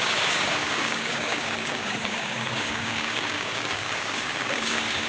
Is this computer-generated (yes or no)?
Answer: yes